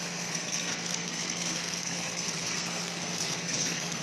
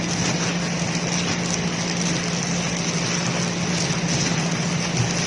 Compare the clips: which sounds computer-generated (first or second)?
first